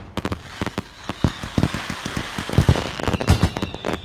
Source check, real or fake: fake